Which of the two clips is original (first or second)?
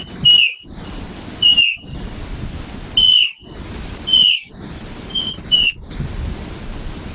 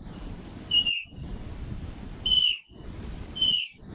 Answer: first